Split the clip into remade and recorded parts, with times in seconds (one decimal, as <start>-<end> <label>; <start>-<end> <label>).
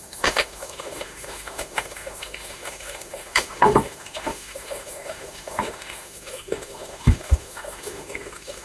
0.0-8.6 remade